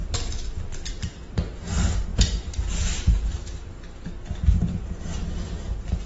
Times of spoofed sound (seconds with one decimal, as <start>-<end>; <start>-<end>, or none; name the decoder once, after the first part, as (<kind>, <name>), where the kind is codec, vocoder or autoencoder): none